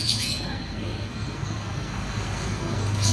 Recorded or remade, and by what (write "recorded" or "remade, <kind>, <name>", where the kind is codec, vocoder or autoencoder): remade, codec, SNAC